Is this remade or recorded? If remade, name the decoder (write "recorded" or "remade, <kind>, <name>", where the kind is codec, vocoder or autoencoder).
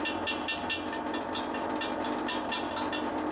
recorded